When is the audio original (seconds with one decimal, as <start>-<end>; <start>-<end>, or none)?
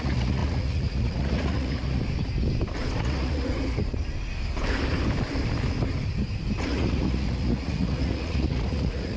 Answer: 2.0-3.0; 3.5-6.6